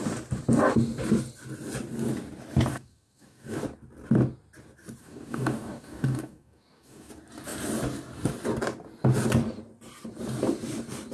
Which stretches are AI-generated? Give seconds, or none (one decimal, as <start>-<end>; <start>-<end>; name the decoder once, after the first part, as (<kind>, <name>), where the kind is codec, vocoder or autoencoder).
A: 2.7-3.6 (codec, DAC); 5.0-7.1